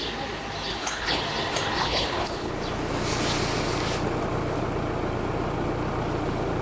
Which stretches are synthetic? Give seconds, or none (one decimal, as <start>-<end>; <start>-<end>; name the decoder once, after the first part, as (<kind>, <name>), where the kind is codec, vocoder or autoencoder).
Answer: 0.7-1.2 (codec, HILCodec); 1.8-2.5